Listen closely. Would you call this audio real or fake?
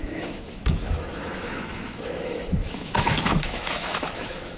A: fake